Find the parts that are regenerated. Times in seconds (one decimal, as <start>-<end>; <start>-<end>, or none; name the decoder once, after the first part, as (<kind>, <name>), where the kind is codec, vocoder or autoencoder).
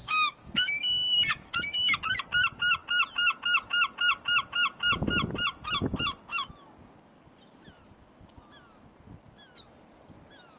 0.0-0.8 (codec, DAC)